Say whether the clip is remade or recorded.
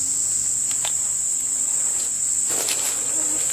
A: recorded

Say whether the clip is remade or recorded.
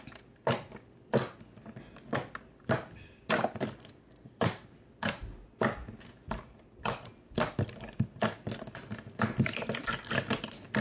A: recorded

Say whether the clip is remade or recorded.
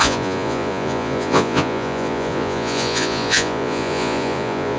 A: remade